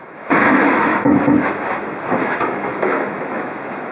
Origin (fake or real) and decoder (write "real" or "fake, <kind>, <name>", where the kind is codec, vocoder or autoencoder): fake, autoencoder, DAC-VAE